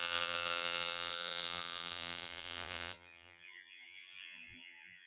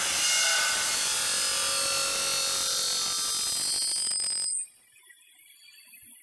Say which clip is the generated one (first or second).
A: first